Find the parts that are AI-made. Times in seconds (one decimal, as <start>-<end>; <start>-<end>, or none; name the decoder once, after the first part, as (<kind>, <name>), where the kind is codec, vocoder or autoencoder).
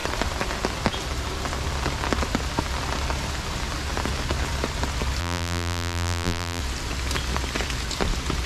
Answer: 5.2-6.6 (vocoder, BigVGAN v2)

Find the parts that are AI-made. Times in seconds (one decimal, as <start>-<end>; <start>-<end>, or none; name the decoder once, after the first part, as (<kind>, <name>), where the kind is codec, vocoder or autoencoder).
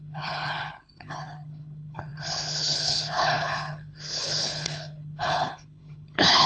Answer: 0.0-6.5 (codec, HILCodec)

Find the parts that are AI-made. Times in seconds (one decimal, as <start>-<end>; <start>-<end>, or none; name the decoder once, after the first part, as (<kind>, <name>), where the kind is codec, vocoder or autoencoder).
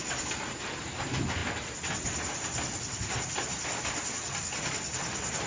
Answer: none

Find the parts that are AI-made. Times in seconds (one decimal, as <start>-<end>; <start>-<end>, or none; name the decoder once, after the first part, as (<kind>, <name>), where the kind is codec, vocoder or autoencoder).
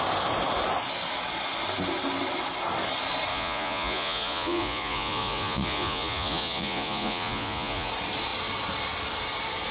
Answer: 3.3-7.9 (vocoder, Vocos)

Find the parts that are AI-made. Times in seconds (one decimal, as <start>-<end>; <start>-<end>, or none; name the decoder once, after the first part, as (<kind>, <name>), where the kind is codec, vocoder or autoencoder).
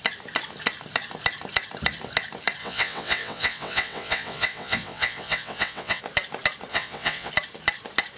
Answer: 2.6-6.0 (vocoder, WaveNeXt); 6.7-7.3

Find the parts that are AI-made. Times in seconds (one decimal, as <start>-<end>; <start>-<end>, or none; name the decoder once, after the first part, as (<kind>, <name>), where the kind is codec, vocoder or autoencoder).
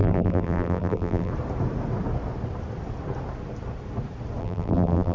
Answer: 0.0-1.3 (vocoder, BigVGAN v2); 4.4-5.1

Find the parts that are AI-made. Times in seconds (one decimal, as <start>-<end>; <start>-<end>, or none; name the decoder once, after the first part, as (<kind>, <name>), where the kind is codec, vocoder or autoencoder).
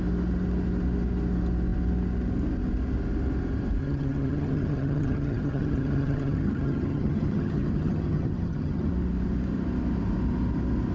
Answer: 3.8-8.9 (vocoder, HiFi-GAN)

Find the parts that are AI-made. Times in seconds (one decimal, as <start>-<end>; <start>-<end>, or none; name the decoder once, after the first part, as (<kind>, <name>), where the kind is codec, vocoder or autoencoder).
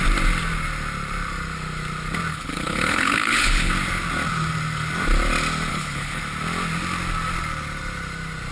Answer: 2.3-3.7 (codec, HILCodec); 5.7-6.2